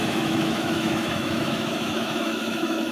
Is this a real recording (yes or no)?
no